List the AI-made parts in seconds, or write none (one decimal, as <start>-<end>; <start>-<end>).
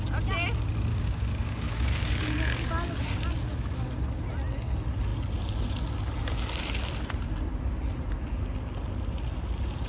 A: 0.9-2.7